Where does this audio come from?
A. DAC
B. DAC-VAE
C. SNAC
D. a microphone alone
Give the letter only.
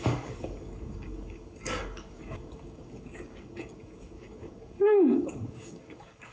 A